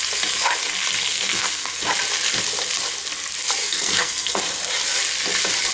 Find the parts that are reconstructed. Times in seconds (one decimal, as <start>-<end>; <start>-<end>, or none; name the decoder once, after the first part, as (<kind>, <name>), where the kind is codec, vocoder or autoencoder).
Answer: 1.1-1.8 (codec, SNAC); 3.6-4.4